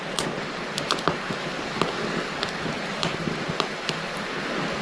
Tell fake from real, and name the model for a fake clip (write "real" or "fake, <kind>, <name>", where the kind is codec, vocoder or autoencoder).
real